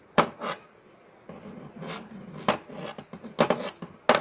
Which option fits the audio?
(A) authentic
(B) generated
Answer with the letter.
A